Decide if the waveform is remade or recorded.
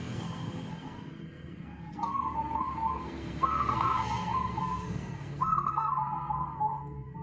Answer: remade